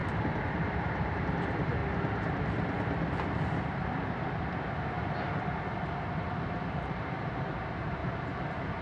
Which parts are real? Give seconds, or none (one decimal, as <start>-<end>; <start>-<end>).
0.0-0.7; 1.8-5.9; 8.0-8.8